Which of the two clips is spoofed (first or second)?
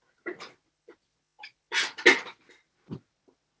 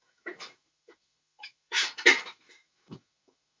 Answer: second